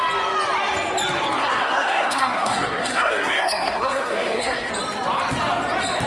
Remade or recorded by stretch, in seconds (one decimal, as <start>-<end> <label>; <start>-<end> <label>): 0.0-1.4 recorded; 1.4-4.7 remade; 4.7-6.1 recorded